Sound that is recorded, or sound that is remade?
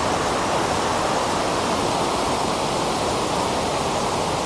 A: recorded